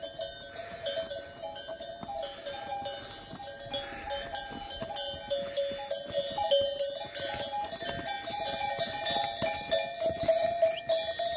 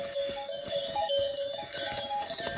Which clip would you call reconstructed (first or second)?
second